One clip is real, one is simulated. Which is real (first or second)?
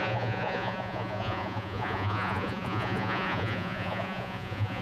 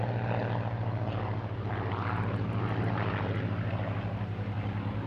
second